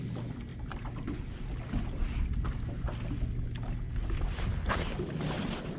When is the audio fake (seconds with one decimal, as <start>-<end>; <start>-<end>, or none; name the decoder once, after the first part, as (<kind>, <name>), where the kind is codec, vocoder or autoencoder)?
none